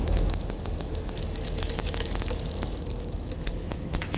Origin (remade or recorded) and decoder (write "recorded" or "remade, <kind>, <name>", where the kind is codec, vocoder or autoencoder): remade, autoencoder, DAC-VAE